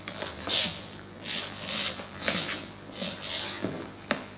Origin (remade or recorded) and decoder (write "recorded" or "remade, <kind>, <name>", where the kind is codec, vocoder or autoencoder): remade, vocoder, BigVGAN v2